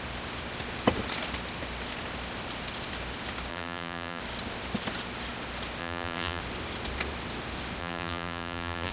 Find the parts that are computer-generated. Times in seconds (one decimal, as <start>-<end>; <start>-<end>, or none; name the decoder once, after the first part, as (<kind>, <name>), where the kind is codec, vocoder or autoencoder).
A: 3.5-4.2 (vocoder, BigVGAN v2); 5.8-6.4; 7.8-8.9